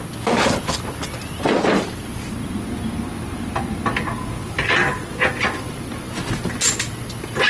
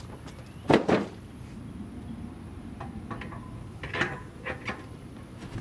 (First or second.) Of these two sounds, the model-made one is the second